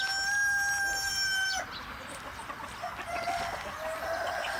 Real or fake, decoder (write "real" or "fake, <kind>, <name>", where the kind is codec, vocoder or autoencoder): real